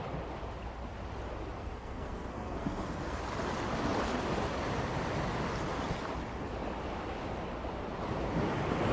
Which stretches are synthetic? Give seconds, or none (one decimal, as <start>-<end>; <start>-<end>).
1.6-3.2